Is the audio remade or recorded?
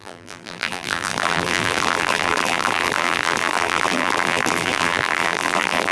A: remade